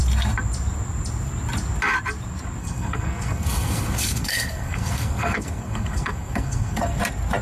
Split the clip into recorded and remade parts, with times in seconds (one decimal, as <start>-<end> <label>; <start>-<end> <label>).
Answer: 0.0-2.6 recorded; 2.6-7.0 remade; 7.0-7.4 recorded